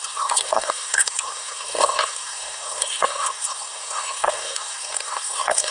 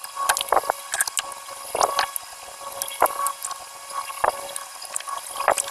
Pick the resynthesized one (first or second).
first